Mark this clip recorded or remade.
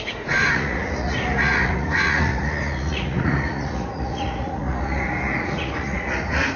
remade